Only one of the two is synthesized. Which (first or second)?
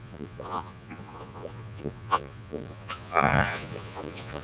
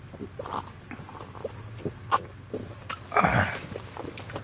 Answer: first